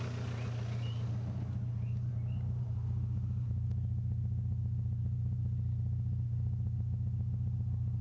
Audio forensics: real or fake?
real